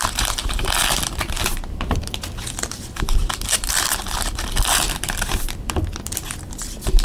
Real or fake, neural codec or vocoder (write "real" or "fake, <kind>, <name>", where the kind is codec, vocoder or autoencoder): fake, vocoder, BigVGAN v2